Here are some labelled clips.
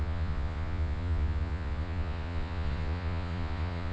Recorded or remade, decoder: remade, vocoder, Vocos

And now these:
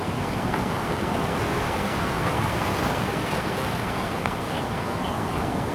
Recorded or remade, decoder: remade, codec, SNAC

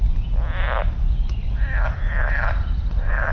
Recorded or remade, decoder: recorded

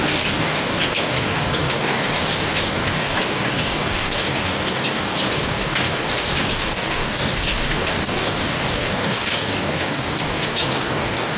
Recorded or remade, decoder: remade, codec, DAC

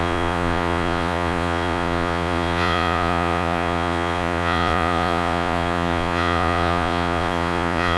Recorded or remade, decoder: remade, vocoder, Vocos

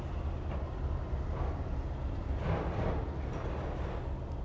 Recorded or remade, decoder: recorded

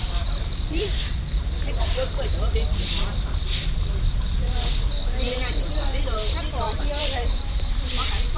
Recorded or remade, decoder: remade, vocoder, BigVGAN v2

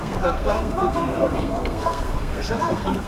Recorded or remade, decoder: remade, codec, SNAC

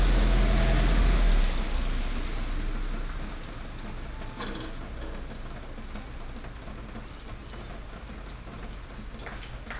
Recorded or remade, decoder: recorded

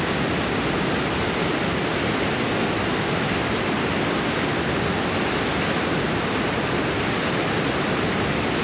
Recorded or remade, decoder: recorded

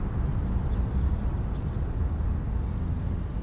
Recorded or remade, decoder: recorded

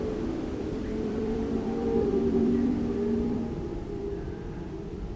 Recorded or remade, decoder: remade, vocoder, BigVGAN v2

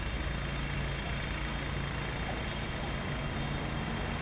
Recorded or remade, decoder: recorded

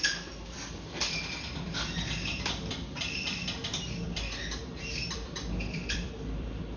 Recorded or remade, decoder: remade, vocoder, BigVGAN v2